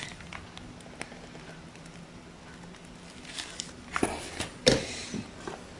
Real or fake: real